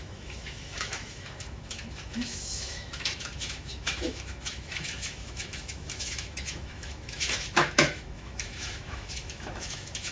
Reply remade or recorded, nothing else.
remade